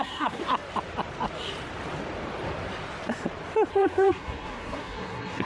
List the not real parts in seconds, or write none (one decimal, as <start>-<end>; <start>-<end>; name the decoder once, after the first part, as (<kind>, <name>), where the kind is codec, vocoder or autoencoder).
0.0-0.4 (codec, SNAC); 3.7-5.5